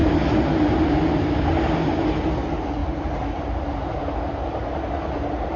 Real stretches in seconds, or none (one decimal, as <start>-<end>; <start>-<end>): 0.9-2.8; 4.0-5.6